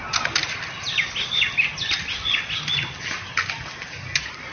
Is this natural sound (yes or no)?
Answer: yes